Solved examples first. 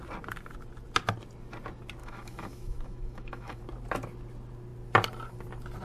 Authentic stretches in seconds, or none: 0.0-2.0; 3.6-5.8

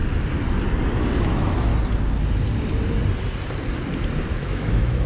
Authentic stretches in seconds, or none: 0.0-1.2; 1.7-4.3

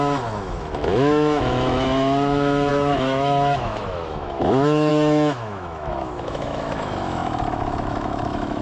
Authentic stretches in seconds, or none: none

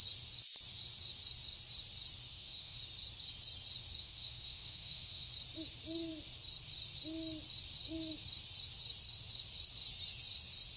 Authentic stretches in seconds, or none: 0.0-2.3; 2.8-4.0; 5.3-10.8